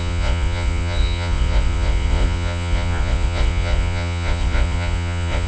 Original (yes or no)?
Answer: no